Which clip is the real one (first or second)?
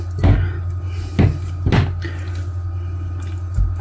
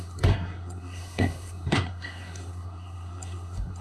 first